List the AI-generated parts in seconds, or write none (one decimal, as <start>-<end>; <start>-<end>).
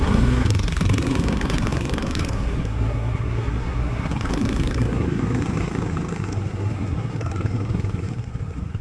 0.0-8.8